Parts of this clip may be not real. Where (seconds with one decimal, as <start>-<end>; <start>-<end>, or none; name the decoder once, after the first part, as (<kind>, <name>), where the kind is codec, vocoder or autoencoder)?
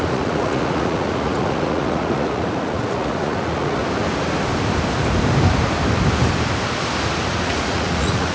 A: 0.0-3.8 (vocoder, Vocos); 7.3-8.3